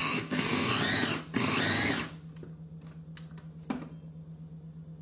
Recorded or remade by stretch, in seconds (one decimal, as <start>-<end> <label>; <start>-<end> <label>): 0.0-0.7 remade; 0.7-5.0 recorded